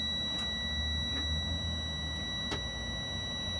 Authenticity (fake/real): real